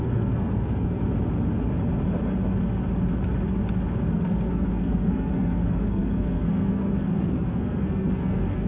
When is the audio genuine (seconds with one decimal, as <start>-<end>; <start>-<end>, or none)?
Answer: 1.0-4.1